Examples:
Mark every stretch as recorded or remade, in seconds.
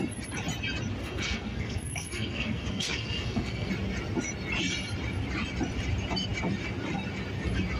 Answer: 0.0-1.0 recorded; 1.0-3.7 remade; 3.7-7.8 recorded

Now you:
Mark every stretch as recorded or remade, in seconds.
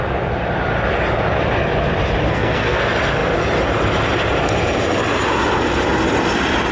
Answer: 0.0-2.3 recorded; 2.3-2.8 remade; 2.8-6.7 recorded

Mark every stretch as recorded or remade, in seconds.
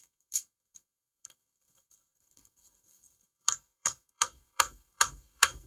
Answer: 0.0-5.7 remade